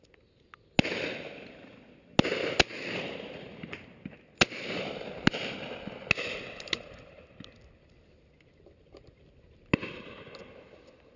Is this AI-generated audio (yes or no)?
no